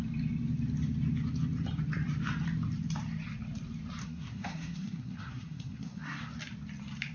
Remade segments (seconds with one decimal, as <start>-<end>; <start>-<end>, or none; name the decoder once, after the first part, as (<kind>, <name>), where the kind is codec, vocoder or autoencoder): 4.0-6.2 (codec, SNAC)